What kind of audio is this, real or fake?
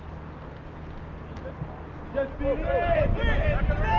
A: real